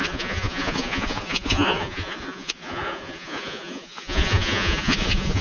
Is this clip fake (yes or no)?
yes